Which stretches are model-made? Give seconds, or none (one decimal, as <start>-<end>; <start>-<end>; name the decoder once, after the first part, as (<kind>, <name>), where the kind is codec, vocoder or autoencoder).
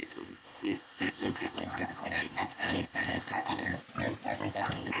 0.0-3.8 (codec, ZipCodec); 4.5-5.0